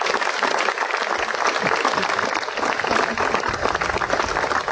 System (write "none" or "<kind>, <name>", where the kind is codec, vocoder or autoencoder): none